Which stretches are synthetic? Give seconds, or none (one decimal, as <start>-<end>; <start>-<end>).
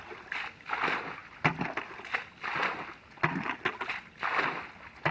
1.2-2.0